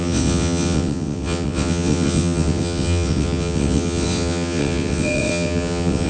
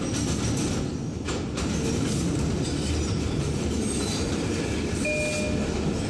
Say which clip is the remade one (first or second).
first